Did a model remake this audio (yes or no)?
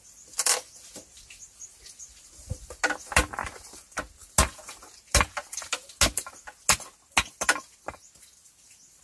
no